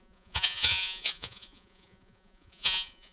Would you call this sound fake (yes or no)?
yes